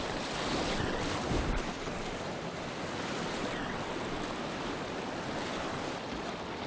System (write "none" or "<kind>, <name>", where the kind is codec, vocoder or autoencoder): none